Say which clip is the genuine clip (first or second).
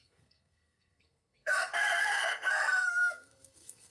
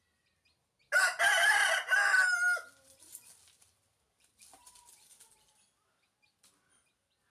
second